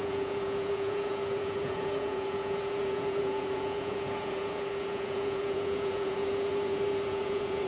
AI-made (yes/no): yes